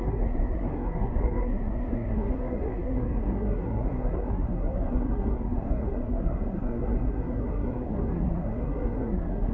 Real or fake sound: fake